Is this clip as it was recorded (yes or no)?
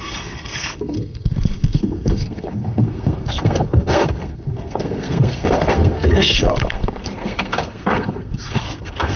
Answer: no